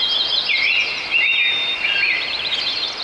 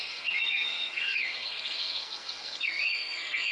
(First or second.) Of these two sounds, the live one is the first